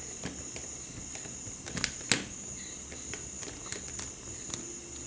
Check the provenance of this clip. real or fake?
real